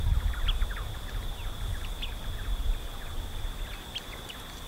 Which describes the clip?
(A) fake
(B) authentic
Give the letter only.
B